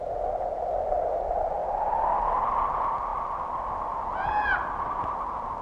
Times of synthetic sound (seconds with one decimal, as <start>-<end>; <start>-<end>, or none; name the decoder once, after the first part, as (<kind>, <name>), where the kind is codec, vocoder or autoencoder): none